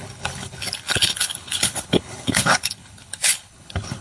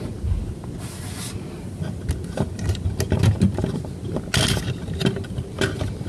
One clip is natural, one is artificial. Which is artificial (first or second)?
first